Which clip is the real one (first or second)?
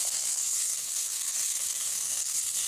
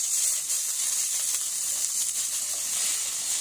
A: second